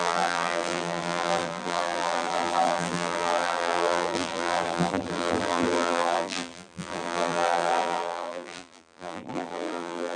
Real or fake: fake